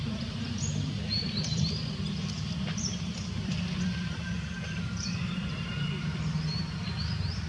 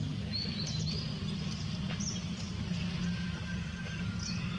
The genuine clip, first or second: second